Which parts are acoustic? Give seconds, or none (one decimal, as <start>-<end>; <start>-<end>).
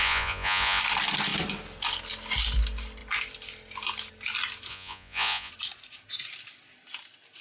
0.8-4.7; 5.5-7.4